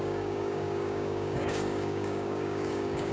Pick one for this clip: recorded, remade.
remade